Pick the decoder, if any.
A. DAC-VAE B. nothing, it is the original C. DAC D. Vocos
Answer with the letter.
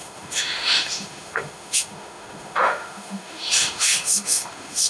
A